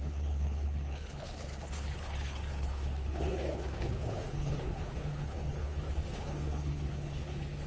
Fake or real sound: fake